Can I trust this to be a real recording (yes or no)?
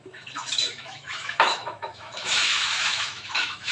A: no